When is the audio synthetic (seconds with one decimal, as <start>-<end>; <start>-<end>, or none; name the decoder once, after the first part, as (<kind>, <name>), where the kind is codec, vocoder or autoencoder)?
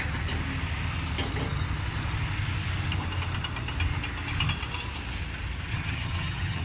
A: 5.7-6.6 (vocoder, HiFi-GAN)